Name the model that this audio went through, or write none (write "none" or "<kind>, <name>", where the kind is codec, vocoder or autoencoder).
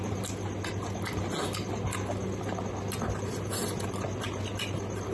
none